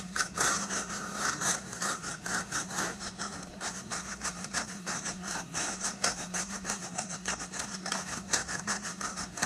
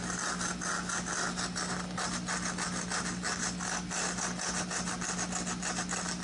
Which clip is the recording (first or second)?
second